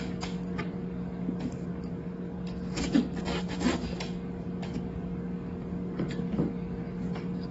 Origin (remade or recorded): remade